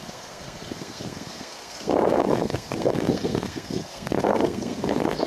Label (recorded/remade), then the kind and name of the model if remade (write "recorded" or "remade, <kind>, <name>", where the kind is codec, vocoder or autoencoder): remade, codec, SNAC